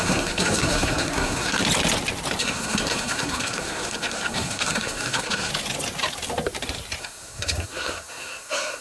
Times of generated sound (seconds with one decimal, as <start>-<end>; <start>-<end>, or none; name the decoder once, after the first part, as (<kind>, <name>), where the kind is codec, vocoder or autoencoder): 0.0-1.6 (codec, SNAC); 2.4-5.5; 7.0-8.8